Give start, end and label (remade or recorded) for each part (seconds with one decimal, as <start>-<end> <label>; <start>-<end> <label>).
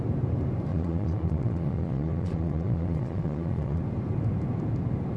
0.0-0.7 recorded; 0.7-3.8 remade; 3.8-5.2 recorded